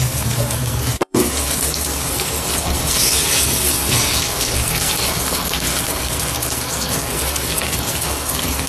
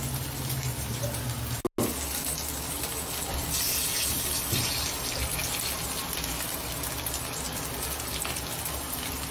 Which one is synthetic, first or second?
first